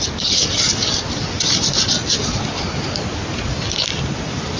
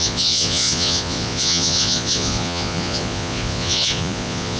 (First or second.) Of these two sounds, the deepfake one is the second